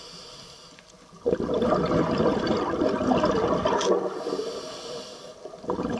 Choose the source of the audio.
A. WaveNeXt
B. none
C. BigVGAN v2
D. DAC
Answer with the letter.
B